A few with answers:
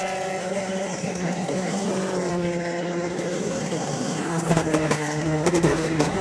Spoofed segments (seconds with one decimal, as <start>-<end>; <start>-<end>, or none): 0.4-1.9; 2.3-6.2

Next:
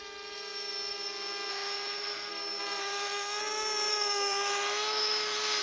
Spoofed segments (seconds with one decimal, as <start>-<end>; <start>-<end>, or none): 1.5-2.3; 2.8-3.4; 3.9-5.6

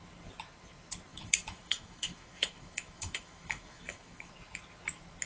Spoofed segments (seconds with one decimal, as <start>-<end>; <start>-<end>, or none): 1.1-4.3

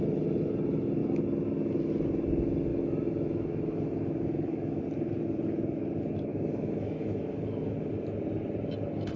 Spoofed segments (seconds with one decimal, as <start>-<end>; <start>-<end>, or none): 2.7-4.8; 6.3-7.9